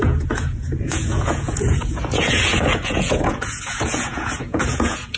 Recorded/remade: remade